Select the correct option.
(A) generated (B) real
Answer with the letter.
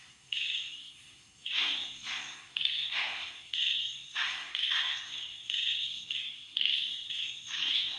A